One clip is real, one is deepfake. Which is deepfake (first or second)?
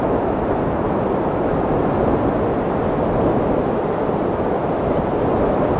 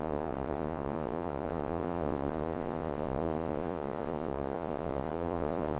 second